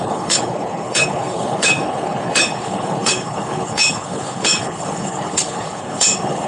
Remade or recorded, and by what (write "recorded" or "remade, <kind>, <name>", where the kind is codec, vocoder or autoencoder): remade, codec, HILCodec